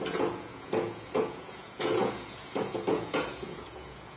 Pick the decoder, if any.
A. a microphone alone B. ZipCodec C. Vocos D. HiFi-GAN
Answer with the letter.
C